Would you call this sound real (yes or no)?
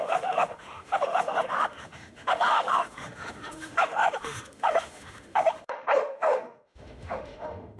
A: no